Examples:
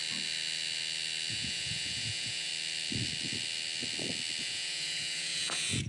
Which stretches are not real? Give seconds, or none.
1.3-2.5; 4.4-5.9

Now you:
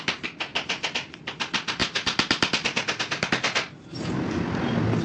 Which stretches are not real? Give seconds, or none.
0.5-1.4

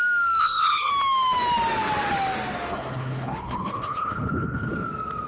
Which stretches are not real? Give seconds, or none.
0.4-0.9; 2.7-4.7

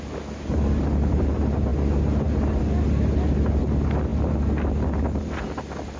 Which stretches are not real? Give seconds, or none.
none

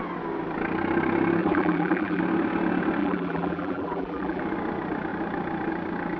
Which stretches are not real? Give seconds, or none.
1.4-2.2; 3.0-4.4

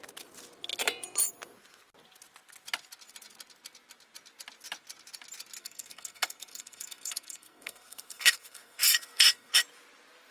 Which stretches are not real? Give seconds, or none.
5.6-9.5

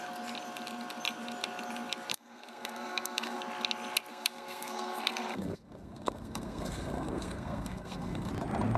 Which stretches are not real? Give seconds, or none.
2.1-3.4; 4.1-8.3

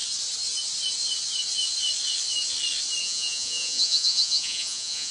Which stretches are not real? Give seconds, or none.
3.0-5.1